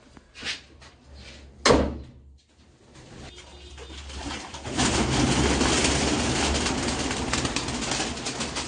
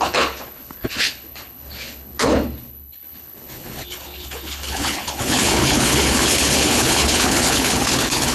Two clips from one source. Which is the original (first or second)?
first